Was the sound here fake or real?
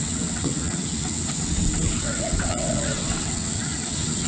fake